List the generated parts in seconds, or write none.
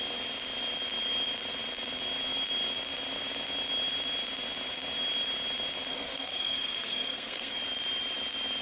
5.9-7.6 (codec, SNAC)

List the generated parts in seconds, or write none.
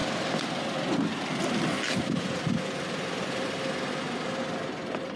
none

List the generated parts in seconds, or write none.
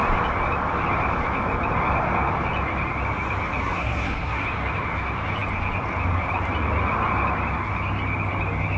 3.6-4.4 (codec, SNAC)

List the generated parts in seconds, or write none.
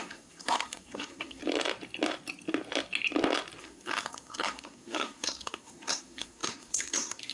0.0-1.4 (codec, SNAC); 3.6-7.3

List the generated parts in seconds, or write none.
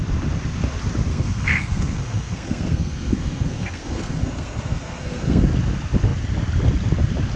1.1-5.5 (codec, SNAC)